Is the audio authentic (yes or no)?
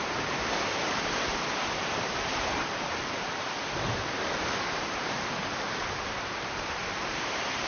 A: no